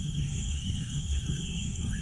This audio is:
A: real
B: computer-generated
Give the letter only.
B